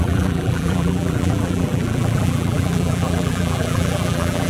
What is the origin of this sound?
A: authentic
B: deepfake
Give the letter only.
B